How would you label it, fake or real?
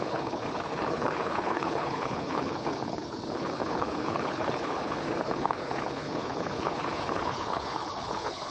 fake